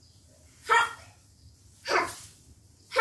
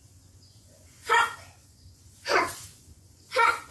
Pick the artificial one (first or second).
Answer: second